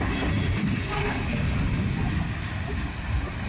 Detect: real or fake real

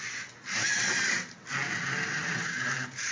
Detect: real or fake real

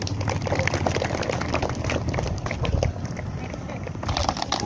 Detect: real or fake real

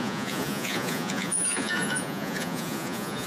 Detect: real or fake fake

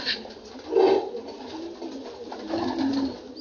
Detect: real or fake real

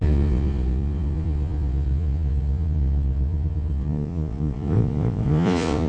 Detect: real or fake fake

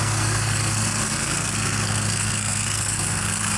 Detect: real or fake fake